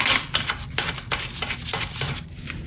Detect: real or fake real